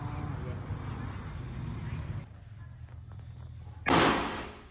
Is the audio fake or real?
real